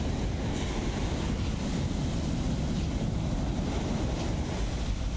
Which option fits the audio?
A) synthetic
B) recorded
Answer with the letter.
B